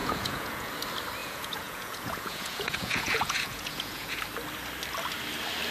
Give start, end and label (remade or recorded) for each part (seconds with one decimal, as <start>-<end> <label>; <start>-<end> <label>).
0.0-0.7 remade; 0.7-1.2 recorded; 1.2-4.2 remade; 4.2-5.7 recorded